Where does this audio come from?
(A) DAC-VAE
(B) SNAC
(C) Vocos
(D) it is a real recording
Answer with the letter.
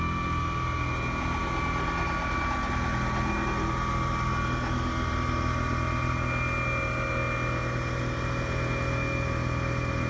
D